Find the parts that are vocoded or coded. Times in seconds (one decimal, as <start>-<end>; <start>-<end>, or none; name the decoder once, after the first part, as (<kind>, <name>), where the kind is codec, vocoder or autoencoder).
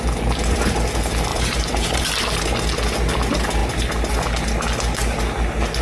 1.3-2.2 (vocoder, BigVGAN v2)